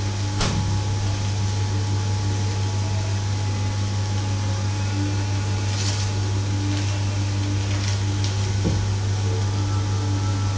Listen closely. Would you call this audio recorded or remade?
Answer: recorded